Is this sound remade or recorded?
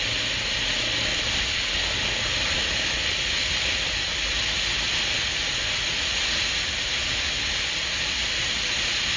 recorded